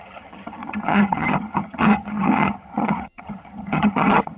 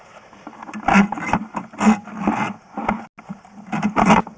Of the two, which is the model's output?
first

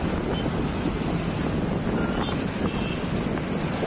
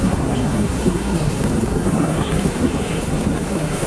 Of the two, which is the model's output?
second